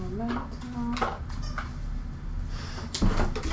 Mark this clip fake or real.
real